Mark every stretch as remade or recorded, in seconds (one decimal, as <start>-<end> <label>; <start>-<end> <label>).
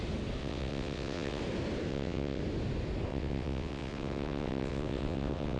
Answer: 0.0-0.4 recorded; 0.4-1.4 remade; 1.4-1.9 recorded; 1.9-2.4 remade; 2.4-3.1 recorded; 3.1-5.6 remade